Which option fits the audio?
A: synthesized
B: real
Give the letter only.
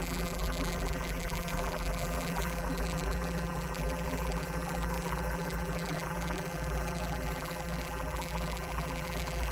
A